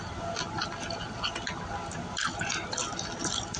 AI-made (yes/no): no